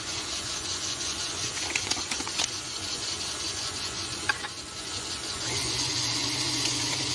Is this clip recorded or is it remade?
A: remade